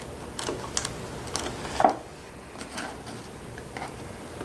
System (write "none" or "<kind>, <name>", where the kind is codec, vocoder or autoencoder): none